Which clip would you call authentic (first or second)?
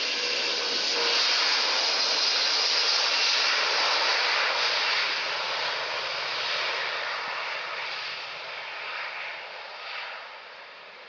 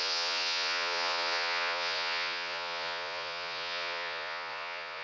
first